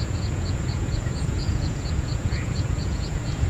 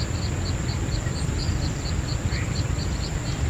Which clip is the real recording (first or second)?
second